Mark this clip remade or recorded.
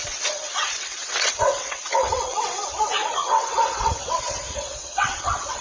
remade